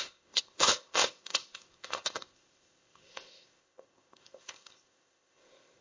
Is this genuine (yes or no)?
no